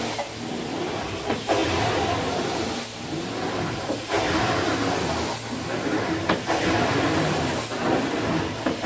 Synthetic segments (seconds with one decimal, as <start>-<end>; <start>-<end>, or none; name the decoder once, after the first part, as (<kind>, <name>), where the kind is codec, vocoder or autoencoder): none